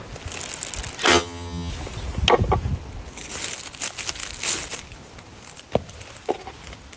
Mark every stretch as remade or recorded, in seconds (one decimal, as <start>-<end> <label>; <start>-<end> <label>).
0.0-1.1 recorded; 1.1-1.7 remade; 1.7-7.0 recorded

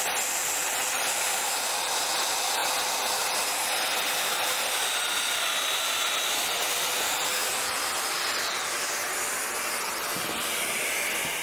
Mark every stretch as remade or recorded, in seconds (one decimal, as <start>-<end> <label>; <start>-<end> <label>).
0.0-11.4 recorded

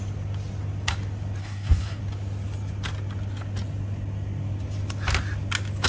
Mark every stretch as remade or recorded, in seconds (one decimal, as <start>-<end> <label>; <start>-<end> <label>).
0.0-1.4 recorded; 1.4-2.0 remade; 2.0-5.9 recorded

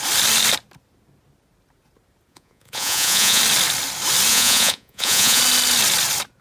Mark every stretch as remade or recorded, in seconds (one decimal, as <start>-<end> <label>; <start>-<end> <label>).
0.0-2.3 recorded; 2.3-3.4 remade; 3.4-4.3 recorded; 4.3-5.4 remade; 5.4-6.4 recorded